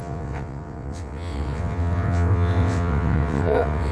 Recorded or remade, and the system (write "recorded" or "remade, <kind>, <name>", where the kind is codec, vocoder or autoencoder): remade, vocoder, WaveNeXt